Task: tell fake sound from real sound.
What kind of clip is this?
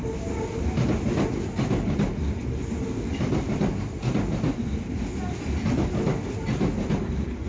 real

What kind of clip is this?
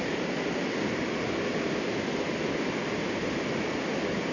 real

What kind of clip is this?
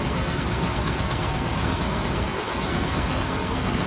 fake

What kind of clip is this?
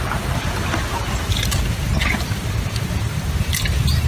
fake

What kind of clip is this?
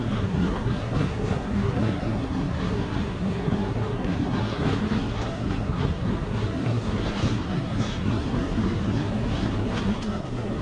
fake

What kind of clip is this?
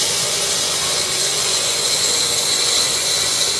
fake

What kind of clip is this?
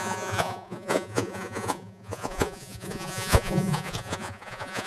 fake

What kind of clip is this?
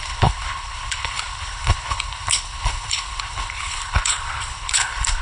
fake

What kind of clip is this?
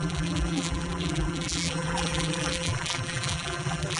fake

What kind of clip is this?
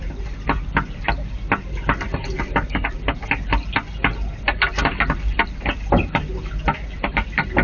real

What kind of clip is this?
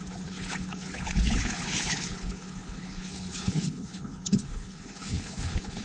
fake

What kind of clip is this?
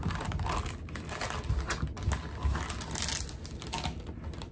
real